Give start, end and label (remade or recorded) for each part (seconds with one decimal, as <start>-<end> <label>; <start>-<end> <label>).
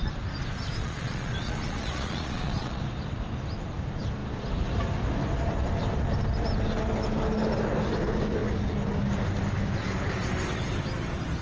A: 0.0-0.8 recorded; 0.8-2.8 remade; 2.8-11.4 recorded